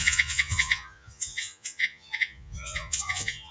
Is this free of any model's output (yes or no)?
no